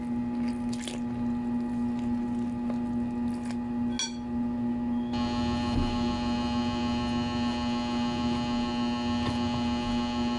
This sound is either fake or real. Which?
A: real